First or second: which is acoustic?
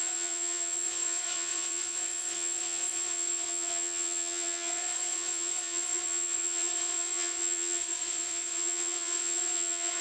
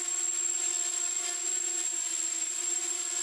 second